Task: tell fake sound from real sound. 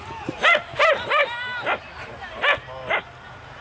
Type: real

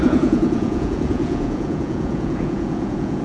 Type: fake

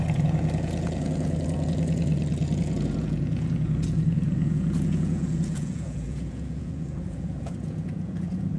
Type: fake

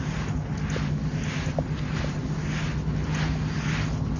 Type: real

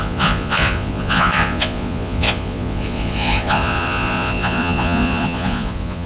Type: fake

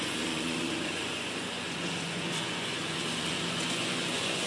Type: fake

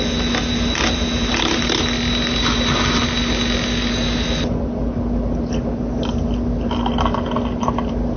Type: real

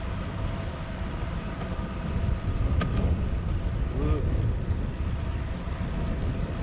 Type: real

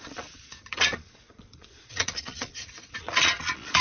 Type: fake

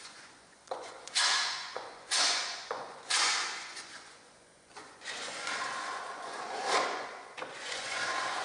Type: fake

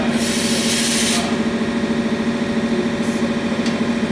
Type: real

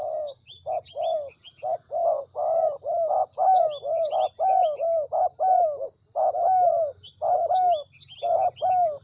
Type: real